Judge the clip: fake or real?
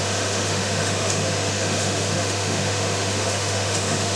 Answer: fake